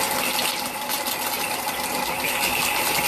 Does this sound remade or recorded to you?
recorded